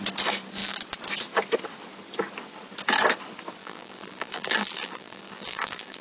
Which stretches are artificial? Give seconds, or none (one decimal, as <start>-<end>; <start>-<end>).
3.6-6.0